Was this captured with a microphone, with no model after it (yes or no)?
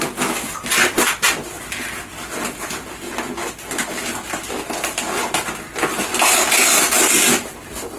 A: yes